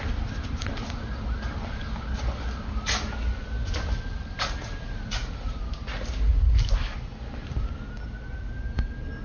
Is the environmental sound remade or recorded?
recorded